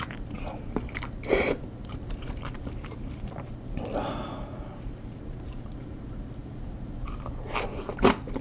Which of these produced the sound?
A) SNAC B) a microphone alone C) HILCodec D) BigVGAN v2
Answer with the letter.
D